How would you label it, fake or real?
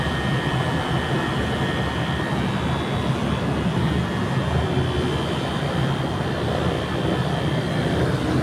real